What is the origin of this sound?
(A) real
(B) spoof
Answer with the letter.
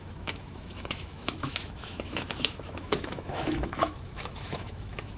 B